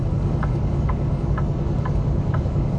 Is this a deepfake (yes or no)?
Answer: yes